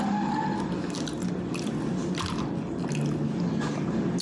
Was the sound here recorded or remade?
recorded